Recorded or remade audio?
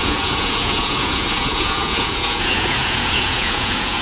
remade